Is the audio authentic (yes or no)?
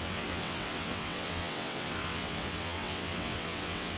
no